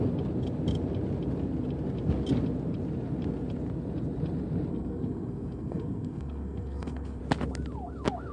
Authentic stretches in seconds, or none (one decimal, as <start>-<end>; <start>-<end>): 0.0-4.7; 7.2-8.3